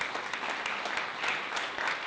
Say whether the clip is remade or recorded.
recorded